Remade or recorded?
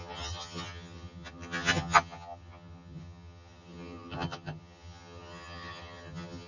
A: remade